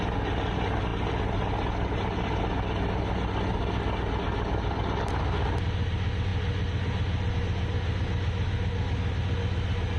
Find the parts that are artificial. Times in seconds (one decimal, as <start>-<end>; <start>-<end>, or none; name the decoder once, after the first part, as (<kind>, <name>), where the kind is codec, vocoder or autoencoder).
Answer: none